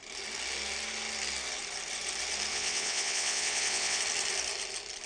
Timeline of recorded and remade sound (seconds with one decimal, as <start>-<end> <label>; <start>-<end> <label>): 0.0-2.5 recorded; 2.5-4.0 remade; 4.0-5.1 recorded